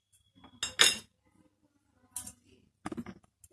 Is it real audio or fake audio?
real